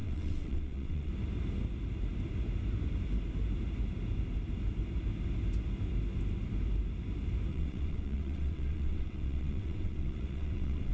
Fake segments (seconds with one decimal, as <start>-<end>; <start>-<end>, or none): 0.0-1.1; 7.5-10.9